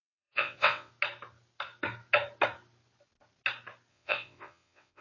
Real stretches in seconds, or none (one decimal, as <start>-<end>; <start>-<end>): 0.9-3.9

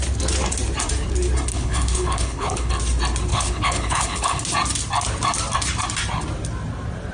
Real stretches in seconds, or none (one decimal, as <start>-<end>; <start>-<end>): 0.0-1.5; 2.7-3.3; 4.4-7.1

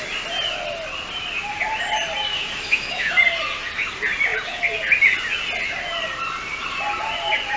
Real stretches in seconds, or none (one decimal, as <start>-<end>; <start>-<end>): 0.0-2.3; 3.2-7.6

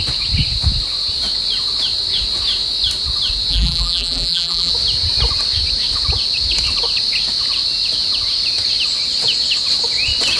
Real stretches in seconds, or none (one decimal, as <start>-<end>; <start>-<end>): 0.0-3.5; 4.7-10.4

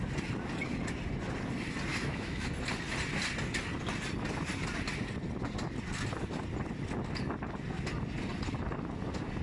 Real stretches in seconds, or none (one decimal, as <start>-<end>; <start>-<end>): 0.0-1.9; 2.5-9.4

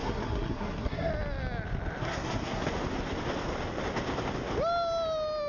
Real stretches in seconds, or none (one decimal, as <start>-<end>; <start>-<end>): 1.1-2.0; 2.7-5.5

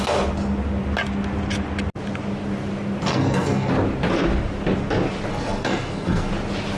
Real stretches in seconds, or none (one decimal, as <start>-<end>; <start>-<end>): 0.0-3.1; 3.7-5.3; 6.3-6.8

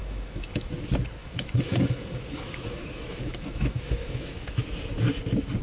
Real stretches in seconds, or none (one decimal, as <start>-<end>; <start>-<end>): 0.7-1.2; 4.6-5.6